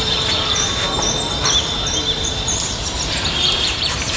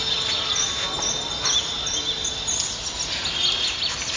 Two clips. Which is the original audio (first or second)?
second